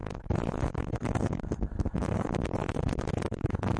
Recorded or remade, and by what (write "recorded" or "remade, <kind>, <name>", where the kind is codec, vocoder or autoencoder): remade, codec, SNAC